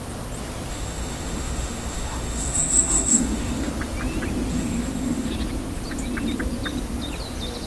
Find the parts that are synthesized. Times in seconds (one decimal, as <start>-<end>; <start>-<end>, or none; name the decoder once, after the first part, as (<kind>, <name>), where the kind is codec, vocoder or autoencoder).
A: 0.7-3.7 (autoencoder, DAC-VAE); 4.5-5.3